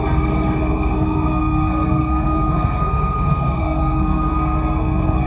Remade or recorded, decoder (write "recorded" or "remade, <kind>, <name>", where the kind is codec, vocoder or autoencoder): remade, codec, SNAC